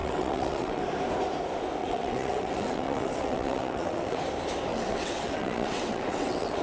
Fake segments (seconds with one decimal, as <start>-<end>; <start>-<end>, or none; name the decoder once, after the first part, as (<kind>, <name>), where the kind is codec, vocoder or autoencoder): 0.0-0.8 (vocoder, WaveNeXt); 1.8-4.2; 4.7-6.6

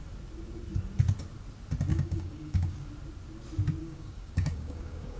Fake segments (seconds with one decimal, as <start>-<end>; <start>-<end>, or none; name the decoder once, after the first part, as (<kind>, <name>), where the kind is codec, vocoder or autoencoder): 1.9-2.9 (codec, DAC); 3.8-5.2

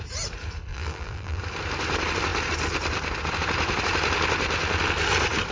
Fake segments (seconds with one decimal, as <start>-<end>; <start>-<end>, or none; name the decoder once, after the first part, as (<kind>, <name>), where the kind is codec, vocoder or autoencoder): 0.7-1.4 (vocoder, BigVGAN v2)

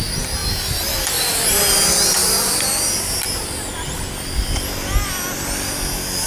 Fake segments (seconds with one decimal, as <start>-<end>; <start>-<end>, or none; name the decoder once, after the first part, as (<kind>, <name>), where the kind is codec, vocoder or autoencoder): none

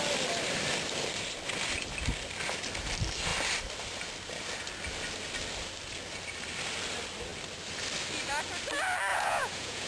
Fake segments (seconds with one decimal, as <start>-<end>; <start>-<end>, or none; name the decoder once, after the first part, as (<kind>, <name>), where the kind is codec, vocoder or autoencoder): 9.1-9.9 (vocoder, Vocos)

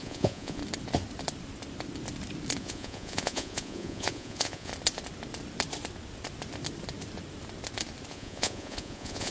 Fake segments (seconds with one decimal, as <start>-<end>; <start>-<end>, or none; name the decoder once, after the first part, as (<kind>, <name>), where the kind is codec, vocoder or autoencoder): 0.0-0.6 (vocoder, Vocos); 2.6-4.7; 8.1-9.3

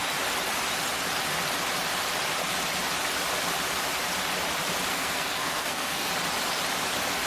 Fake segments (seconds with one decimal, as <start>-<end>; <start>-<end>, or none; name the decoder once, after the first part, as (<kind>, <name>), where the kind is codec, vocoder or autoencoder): 4.9-6.1 (codec, SNAC)